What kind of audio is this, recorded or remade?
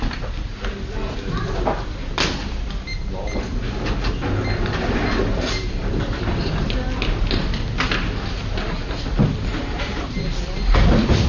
recorded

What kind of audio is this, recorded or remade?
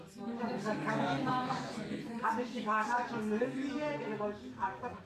remade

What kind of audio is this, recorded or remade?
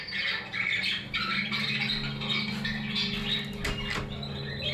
recorded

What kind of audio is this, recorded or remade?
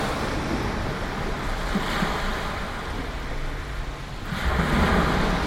recorded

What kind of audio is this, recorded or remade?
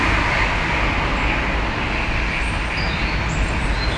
recorded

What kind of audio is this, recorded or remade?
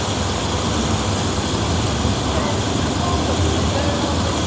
recorded